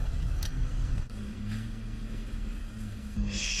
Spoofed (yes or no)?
yes